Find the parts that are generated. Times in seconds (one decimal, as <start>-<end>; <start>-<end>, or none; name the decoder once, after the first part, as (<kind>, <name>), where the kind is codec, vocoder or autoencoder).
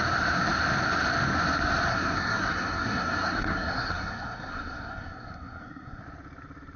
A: 1.9-6.0 (codec, SNAC)